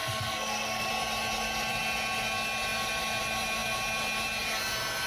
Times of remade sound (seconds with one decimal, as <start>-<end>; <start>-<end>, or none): 0.0-0.9